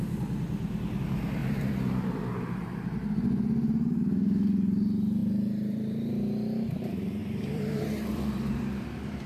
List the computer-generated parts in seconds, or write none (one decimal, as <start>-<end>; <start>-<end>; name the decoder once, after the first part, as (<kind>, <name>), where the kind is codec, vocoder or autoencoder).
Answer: 1.4-3.1 (vocoder, BigVGAN v2); 5.2-6.1; 7.2-9.3